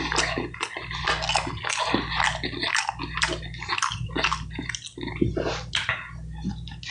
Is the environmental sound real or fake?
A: real